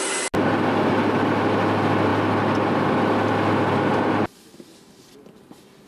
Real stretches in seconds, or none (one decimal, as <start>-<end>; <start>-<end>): 0.0-5.9